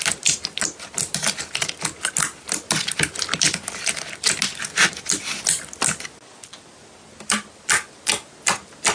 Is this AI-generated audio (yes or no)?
no